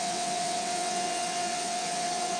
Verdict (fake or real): fake